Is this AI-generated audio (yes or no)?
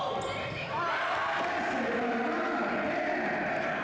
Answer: no